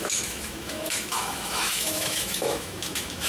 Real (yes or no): no